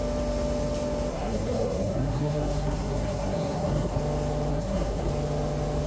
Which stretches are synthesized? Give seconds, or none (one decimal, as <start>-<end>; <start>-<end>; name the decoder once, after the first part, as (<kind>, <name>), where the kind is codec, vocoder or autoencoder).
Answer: 1.1-4.0 (codec, SNAC); 4.5-5.1